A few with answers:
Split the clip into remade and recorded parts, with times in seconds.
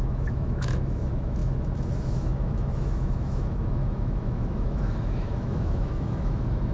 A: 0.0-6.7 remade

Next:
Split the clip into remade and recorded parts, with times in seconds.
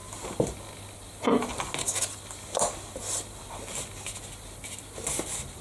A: 0.0-5.6 recorded